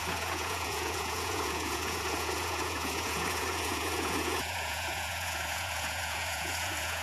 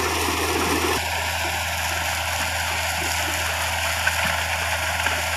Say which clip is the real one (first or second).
second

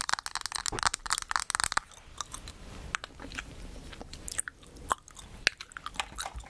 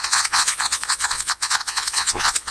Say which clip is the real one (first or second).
first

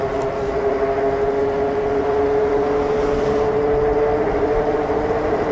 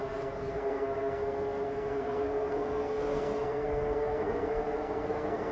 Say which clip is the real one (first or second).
first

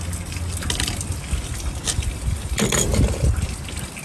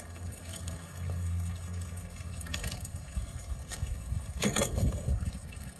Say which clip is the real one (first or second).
first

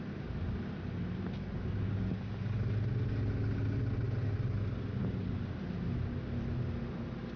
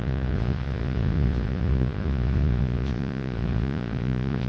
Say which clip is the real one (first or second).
first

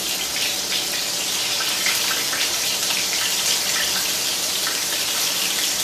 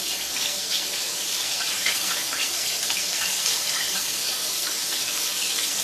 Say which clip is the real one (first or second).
first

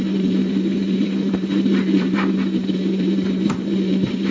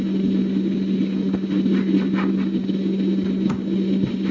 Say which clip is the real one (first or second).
second